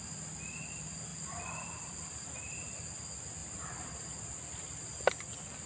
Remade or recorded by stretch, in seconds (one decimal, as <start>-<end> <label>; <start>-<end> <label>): 0.0-1.1 recorded; 1.1-2.8 remade; 2.8-5.7 recorded